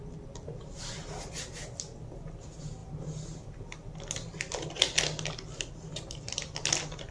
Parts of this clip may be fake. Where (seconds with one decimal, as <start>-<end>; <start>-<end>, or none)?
2.8-3.5